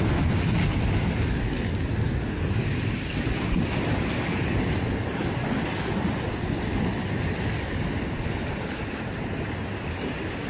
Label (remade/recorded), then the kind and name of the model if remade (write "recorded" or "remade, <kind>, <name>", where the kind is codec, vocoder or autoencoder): recorded